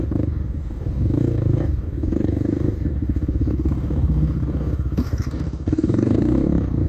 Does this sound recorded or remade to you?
remade